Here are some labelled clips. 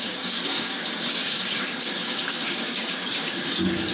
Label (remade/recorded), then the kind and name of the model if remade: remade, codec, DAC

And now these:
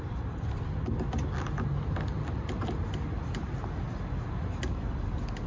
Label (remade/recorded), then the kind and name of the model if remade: recorded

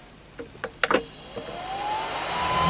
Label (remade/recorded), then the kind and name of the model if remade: recorded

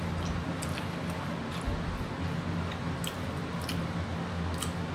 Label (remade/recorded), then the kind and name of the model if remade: recorded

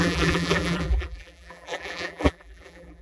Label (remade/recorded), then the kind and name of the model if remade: remade, vocoder, BigVGAN v2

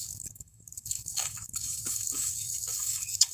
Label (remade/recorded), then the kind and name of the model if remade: remade, codec, DAC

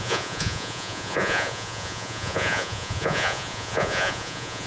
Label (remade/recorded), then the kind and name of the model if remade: remade, vocoder, Vocos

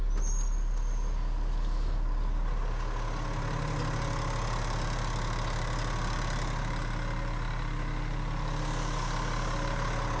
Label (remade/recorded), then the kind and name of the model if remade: recorded